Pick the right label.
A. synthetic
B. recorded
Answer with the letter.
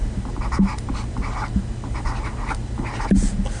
B